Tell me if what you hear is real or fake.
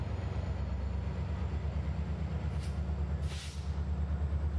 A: real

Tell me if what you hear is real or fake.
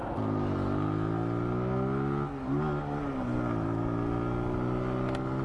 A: real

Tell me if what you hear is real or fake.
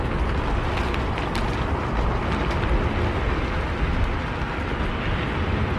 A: real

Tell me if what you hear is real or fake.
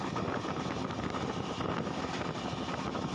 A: real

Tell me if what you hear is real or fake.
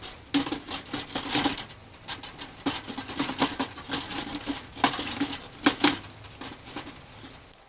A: real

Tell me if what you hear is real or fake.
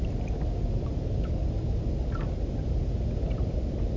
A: real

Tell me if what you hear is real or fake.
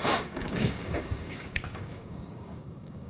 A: fake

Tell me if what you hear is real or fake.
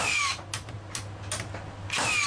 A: real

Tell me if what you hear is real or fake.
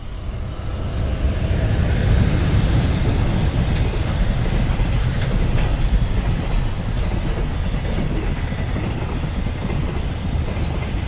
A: real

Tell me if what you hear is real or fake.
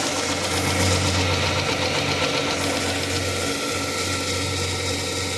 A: real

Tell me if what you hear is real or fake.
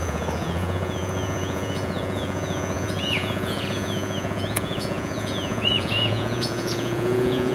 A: fake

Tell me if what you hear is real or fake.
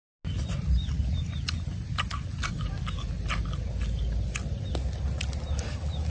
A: real